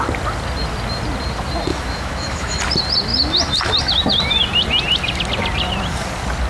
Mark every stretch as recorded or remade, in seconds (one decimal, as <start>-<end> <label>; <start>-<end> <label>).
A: 0.0-1.7 recorded; 1.7-2.6 remade; 2.6-6.5 recorded